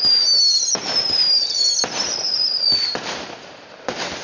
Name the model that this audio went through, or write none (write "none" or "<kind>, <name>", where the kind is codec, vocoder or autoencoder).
vocoder, BigVGAN v2